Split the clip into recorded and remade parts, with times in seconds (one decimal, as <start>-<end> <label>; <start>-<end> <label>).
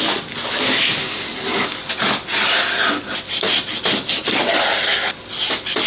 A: 0.0-5.9 recorded